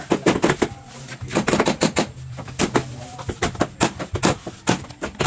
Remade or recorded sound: recorded